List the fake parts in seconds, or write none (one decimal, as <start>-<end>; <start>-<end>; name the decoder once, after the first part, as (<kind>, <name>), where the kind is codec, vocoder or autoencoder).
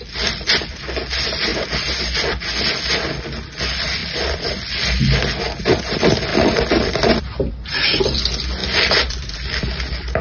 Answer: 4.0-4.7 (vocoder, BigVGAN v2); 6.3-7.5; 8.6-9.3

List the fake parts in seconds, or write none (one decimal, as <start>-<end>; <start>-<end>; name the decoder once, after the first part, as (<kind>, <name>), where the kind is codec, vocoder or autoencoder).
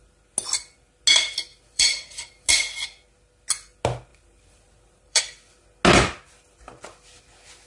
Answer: 1.5-2.5 (vocoder, BigVGAN v2); 4.1-5.2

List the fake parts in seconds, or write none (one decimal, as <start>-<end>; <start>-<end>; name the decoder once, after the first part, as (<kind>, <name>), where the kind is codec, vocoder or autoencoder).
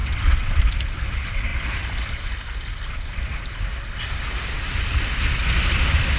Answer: 0.0-0.6 (vocoder, WaveNeXt)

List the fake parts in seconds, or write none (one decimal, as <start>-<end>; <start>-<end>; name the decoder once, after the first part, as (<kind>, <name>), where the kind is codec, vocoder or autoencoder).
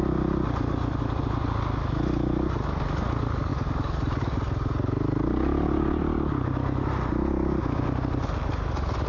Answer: none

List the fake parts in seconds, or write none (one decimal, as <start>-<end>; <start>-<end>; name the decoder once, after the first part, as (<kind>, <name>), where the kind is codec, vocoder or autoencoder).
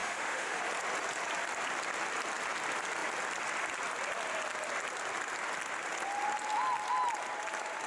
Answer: 0.0-0.6 (autoencoder, DAC-VAE)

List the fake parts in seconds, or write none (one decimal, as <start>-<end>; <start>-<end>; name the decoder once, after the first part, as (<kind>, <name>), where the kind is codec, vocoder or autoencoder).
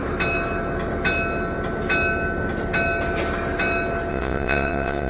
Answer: 4.1-5.1 (vocoder, WaveNeXt)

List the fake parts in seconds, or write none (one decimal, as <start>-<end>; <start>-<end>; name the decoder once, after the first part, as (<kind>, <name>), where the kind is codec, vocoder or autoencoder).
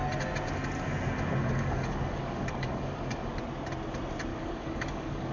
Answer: 1.4-3.3 (codec, DAC); 4.3-5.3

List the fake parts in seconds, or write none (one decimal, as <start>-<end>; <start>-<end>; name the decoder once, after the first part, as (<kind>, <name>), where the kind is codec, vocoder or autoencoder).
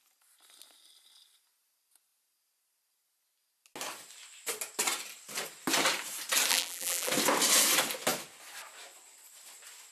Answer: 6.5-7.1 (vocoder, BigVGAN v2)